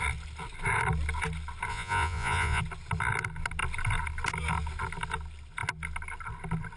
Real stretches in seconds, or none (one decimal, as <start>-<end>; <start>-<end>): 0.0-1.7; 2.6-6.8